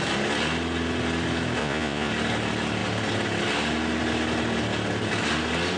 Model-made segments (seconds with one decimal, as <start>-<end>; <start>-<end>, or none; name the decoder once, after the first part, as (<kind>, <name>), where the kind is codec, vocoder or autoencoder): 1.6-2.1 (vocoder, Vocos)